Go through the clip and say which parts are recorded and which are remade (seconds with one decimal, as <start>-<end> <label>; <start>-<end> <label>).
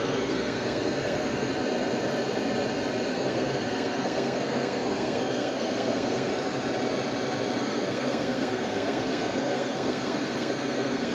0.0-1.5 remade; 1.5-3.1 recorded; 3.1-6.3 remade; 6.3-7.6 recorded; 7.6-11.1 remade